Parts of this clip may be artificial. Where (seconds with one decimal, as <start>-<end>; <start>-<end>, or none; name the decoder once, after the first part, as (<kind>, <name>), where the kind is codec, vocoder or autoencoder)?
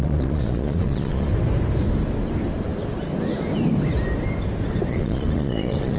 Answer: 0.0-1.3 (vocoder, Vocos); 4.9-6.0